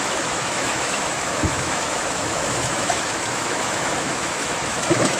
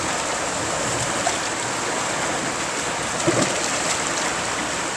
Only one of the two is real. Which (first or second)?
second